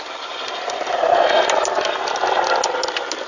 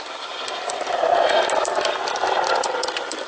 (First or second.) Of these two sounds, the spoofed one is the second